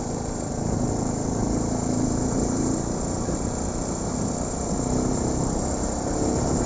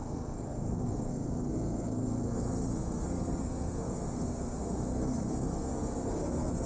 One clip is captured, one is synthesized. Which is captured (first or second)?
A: first